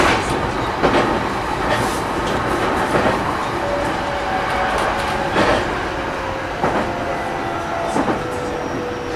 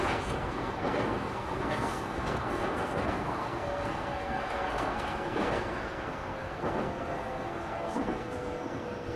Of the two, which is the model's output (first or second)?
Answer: second